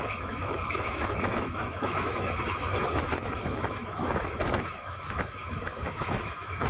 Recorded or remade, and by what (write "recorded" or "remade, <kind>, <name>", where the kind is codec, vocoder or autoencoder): remade, autoencoder, DAC-VAE